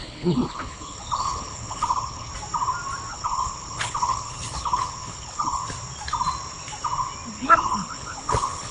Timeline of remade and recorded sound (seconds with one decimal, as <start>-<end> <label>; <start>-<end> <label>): 0.0-2.3 remade; 2.3-3.1 recorded; 3.1-5.6 remade; 5.6-7.3 recorded; 7.3-8.7 remade